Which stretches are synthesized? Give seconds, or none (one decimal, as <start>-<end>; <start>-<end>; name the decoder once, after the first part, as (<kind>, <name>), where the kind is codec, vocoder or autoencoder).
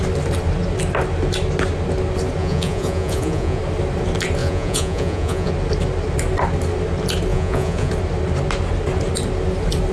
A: 2.4-3.6 (vocoder, Vocos); 4.4-5.5; 7.3-7.9